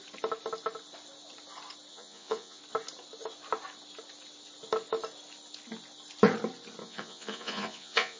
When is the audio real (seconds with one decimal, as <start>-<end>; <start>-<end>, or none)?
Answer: 0.0-1.9; 2.6-6.8